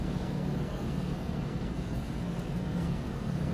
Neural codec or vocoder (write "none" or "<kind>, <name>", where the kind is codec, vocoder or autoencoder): codec, SNAC